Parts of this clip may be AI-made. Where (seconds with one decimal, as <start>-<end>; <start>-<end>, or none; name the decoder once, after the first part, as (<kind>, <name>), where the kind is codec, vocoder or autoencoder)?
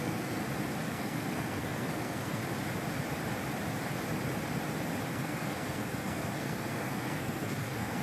0.0-0.4 (codec, SNAC); 0.9-2.4; 5.1-8.0